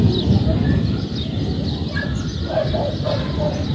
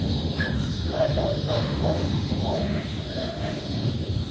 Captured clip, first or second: first